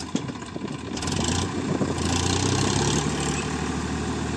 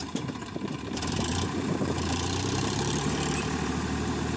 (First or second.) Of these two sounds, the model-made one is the second